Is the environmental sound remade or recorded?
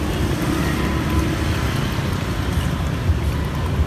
recorded